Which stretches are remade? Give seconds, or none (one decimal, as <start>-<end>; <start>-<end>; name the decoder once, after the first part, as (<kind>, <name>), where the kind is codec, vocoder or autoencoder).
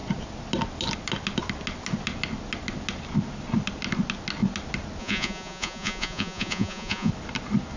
5.0-7.1 (vocoder, Vocos)